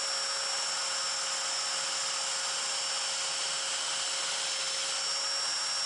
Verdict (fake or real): real